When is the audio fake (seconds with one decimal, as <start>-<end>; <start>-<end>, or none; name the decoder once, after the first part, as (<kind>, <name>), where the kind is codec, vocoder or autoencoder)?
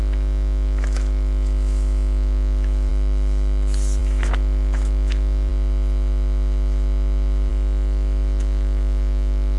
0.0-2.9 (autoencoder, DAC-VAE); 4.0-5.5; 7.5-9.6